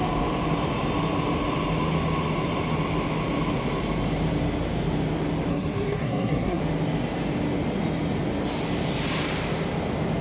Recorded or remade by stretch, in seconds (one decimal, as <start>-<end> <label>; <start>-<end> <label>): 0.0-5.5 recorded; 5.5-6.6 remade; 6.6-10.2 recorded